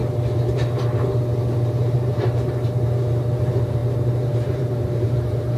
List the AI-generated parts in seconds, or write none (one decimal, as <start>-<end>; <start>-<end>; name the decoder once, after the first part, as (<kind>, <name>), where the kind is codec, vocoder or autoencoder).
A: 1.8-5.6 (vocoder, BigVGAN v2)